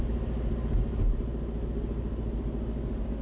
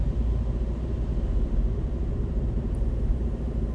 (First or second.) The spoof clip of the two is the second